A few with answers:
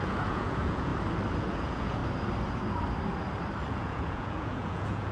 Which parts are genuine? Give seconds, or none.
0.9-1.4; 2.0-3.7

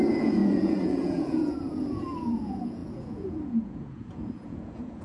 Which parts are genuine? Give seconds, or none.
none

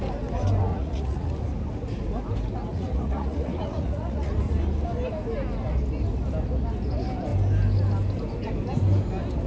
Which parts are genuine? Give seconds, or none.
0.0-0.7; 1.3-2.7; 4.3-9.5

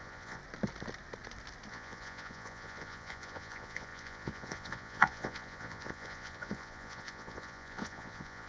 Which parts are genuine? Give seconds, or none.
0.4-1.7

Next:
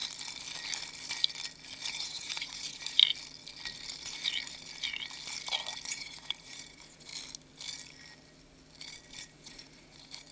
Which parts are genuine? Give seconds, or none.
0.0-1.9; 3.0-5.9; 7.1-9.2

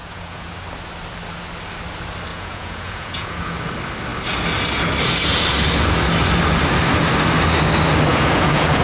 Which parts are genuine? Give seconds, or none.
0.5-2.3; 3.6-8.1

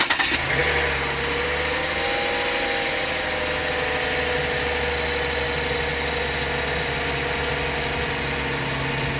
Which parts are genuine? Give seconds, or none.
0.0-9.2

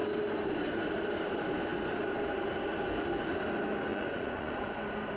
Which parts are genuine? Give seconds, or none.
0.0-3.9; 4.8-5.2